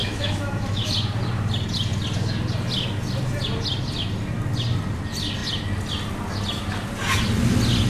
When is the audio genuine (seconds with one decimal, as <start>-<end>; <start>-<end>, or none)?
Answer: 0.9-7.9